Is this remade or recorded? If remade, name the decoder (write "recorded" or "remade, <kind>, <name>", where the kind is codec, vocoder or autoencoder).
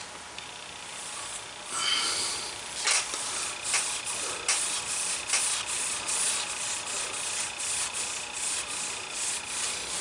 recorded